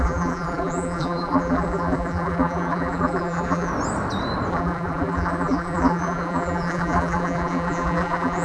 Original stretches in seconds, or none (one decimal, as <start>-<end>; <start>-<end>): 3.7-4.5